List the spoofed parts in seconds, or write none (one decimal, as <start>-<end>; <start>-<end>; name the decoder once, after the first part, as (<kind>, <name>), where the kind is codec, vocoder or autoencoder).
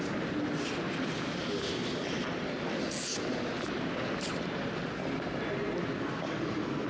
none